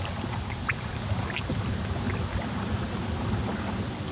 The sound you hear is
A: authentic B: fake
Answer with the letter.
A